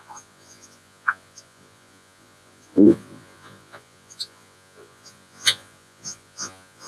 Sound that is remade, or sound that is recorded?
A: remade